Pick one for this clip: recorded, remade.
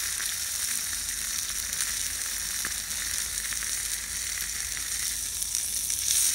recorded